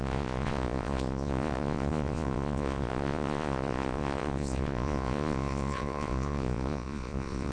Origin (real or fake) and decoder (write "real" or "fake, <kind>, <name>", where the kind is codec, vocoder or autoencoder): fake, vocoder, Vocos